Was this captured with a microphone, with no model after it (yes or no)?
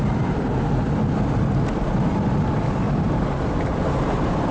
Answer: no